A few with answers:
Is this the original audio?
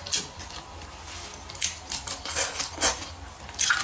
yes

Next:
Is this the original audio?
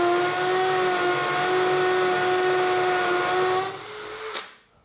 yes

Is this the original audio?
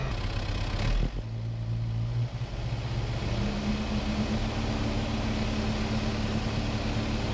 yes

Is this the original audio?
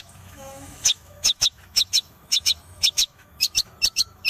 no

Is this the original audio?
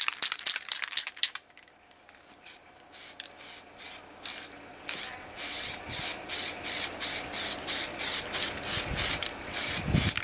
yes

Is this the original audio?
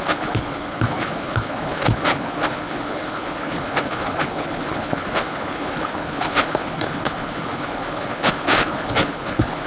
no